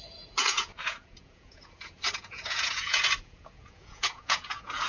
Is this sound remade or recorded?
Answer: remade